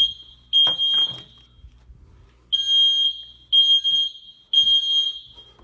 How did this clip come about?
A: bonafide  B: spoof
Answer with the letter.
A